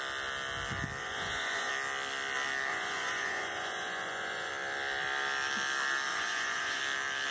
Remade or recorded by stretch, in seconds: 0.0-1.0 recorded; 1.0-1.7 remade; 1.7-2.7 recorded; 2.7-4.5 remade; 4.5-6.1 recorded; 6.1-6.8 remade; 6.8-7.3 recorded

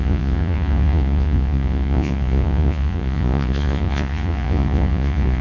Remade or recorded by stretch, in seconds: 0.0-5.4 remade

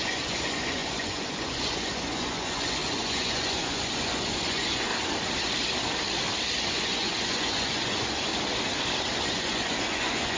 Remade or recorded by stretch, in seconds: 0.0-4.9 remade; 4.9-6.7 recorded; 6.7-8.3 remade; 8.3-9.3 recorded; 9.3-10.4 remade